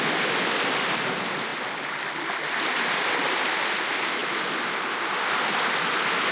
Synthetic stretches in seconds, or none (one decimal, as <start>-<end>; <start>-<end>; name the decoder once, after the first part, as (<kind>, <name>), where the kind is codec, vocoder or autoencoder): none